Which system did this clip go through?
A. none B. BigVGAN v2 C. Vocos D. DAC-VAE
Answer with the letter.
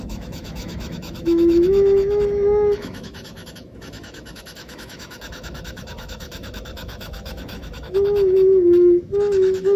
D